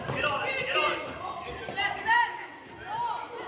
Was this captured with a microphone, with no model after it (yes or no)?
yes